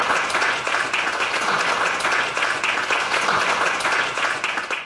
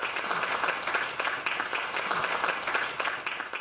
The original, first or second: second